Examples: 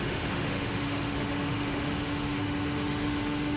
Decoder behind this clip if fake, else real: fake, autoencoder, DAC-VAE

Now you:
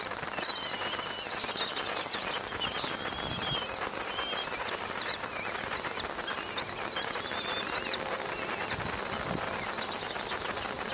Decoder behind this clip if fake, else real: real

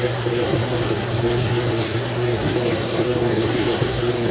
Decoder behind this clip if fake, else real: fake, codec, SNAC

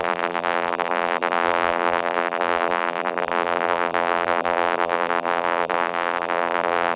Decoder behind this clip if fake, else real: fake, vocoder, BigVGAN v2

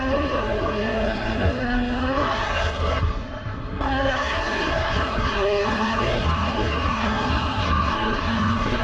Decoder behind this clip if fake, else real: fake, codec, SNAC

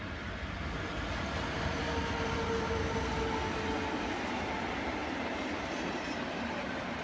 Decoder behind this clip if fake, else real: real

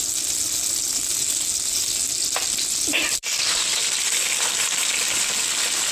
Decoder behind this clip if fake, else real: real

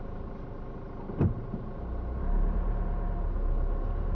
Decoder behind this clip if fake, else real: real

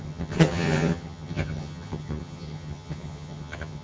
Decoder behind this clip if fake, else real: fake, vocoder, HiFi-GAN